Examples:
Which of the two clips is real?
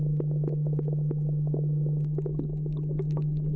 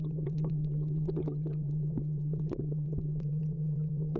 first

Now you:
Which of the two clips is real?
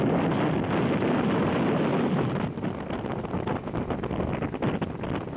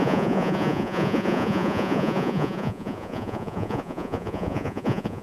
first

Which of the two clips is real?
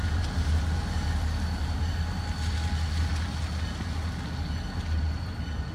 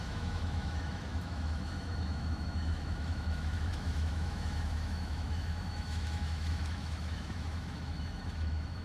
first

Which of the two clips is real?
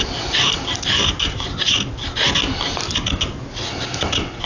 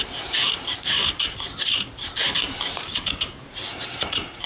first